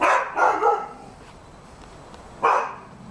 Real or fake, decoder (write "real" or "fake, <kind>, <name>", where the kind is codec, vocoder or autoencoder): real